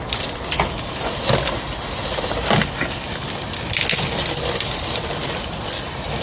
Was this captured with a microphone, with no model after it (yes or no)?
yes